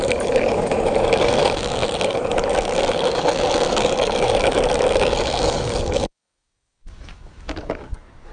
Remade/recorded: remade